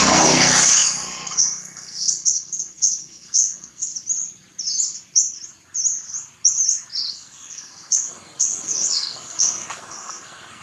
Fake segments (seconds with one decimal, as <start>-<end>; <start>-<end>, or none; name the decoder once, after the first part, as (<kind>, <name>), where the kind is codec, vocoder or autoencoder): 0.0-3.9 (codec, SNAC); 7.1-10.6